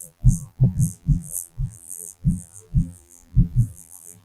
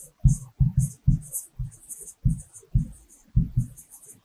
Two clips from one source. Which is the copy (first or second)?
first